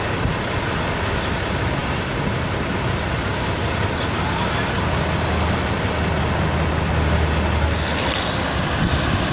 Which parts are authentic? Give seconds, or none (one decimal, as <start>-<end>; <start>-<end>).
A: 0.0-9.3